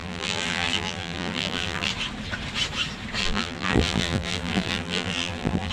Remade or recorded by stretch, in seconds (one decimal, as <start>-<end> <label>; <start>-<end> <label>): 0.0-1.9 remade; 1.9-3.2 recorded; 3.2-5.7 remade